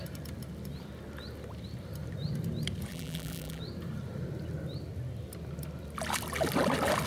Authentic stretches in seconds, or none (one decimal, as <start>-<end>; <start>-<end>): 0.0-2.9; 3.6-7.1